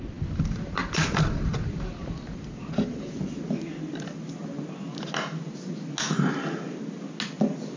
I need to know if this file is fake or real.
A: real